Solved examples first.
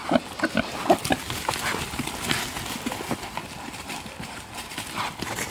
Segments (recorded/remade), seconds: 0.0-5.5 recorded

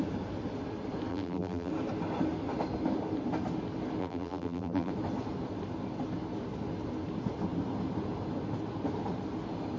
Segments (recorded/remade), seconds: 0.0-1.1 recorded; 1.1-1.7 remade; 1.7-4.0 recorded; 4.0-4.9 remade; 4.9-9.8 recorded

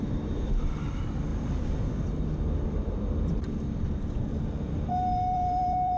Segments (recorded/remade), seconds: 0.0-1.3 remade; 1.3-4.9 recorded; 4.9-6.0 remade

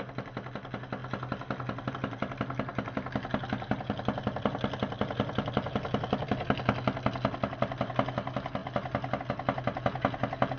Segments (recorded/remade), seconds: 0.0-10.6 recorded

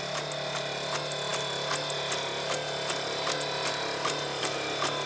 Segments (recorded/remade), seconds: 0.0-5.1 recorded

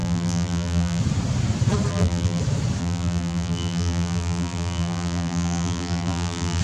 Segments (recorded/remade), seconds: 0.0-1.0 remade; 1.0-1.9 recorded; 1.9-2.4 remade; 2.4-2.8 recorded; 2.8-6.6 remade

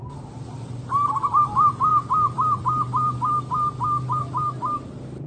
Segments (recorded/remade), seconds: 0.0-5.3 remade